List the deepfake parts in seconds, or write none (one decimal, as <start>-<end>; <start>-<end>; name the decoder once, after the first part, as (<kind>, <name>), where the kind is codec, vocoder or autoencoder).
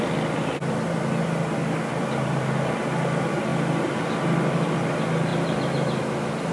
1.9-2.6 (vocoder, BigVGAN v2); 5.3-6.0